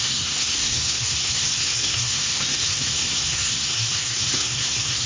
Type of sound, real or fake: fake